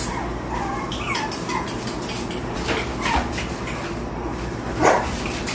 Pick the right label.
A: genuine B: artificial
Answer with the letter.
A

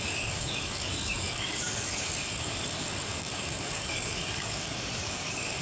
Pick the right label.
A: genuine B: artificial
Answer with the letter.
B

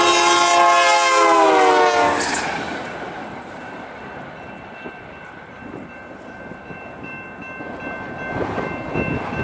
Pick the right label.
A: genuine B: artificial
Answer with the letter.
A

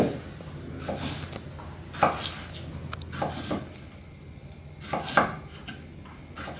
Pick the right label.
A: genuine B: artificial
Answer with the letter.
A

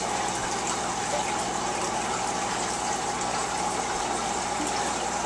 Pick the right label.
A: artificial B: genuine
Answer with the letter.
B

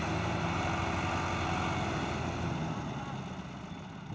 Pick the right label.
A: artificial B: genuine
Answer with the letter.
B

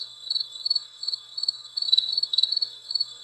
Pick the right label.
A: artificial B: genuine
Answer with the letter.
A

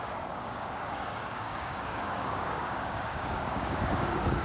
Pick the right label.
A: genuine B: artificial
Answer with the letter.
B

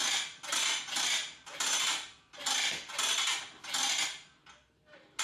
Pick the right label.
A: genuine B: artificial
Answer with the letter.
A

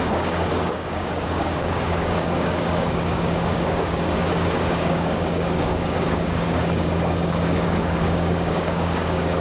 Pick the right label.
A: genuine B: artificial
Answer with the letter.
B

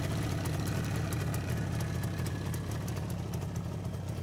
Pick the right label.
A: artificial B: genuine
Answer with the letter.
B